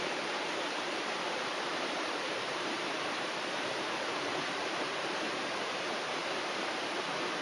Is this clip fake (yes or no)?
yes